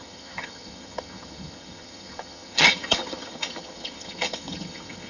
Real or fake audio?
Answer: fake